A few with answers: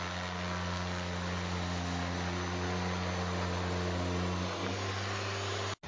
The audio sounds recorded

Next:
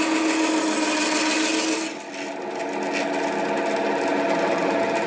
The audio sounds recorded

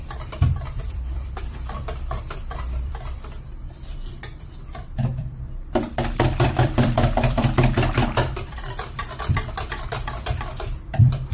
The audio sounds remade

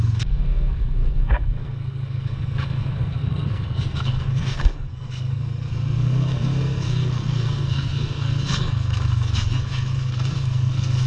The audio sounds remade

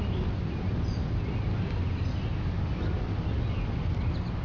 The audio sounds recorded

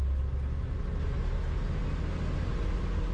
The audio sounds recorded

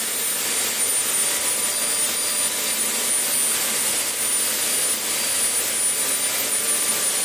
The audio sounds recorded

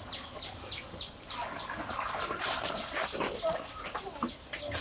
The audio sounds recorded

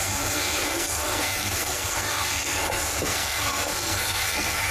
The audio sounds remade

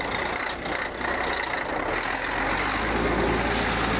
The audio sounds recorded